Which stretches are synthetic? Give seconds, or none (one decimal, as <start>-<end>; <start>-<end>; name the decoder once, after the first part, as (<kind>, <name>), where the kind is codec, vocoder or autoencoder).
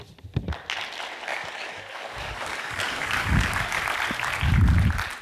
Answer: 1.3-3.8 (codec, DAC)